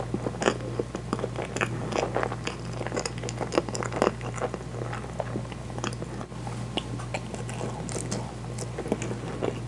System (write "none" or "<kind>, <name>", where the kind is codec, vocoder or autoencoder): none